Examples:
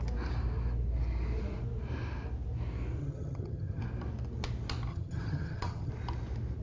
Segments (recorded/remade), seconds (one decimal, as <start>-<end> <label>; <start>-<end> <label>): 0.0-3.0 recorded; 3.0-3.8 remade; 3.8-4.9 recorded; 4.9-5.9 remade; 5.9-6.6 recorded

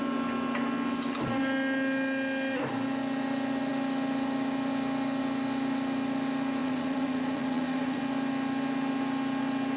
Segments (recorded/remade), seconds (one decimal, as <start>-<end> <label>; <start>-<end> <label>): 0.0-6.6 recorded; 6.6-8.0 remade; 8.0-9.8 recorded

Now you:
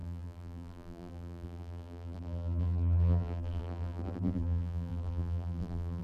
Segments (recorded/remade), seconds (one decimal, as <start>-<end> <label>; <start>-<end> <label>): 0.0-6.0 remade

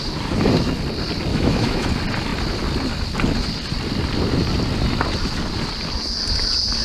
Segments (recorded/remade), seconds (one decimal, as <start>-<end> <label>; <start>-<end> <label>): 0.0-1.3 recorded; 1.3-1.9 remade; 1.9-6.8 recorded

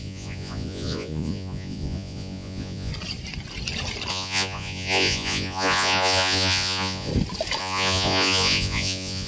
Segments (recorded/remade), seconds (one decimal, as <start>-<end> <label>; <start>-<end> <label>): 0.0-2.9 remade; 2.9-4.1 recorded; 4.1-7.1 remade; 7.1-7.6 recorded; 7.6-9.3 remade